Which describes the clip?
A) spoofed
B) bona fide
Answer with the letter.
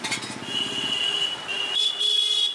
B